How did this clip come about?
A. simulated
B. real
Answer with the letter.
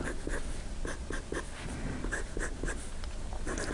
B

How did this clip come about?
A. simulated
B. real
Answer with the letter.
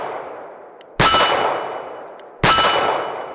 B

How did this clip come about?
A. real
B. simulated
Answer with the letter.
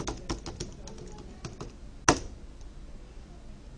A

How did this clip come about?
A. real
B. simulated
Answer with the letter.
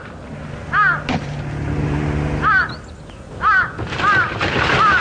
A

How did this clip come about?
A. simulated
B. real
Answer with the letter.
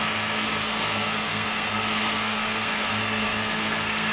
A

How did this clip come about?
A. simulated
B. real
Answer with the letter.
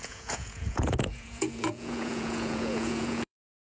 A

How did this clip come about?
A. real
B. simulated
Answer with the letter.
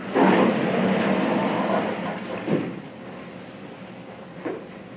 A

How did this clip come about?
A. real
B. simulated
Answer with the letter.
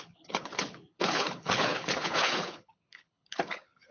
B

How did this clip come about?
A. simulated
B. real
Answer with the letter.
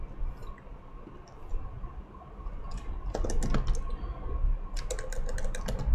B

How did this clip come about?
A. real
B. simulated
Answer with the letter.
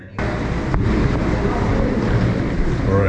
A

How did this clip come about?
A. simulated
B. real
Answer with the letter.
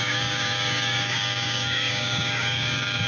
A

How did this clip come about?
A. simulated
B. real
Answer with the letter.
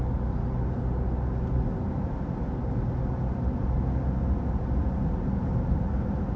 B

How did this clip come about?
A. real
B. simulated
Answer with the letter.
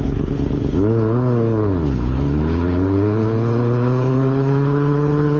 B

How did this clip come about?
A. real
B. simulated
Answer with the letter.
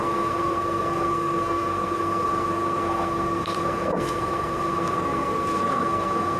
B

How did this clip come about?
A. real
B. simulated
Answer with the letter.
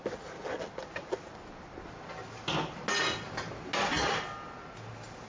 A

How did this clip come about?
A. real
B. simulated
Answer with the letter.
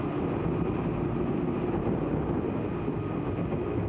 A